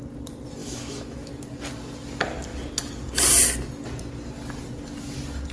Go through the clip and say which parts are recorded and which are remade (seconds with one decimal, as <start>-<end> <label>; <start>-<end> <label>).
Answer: 0.0-0.6 recorded; 0.6-1.3 remade; 1.3-5.5 recorded